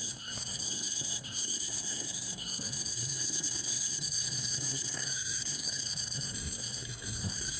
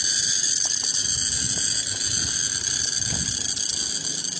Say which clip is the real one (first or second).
second